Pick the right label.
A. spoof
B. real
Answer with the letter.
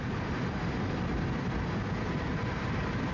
B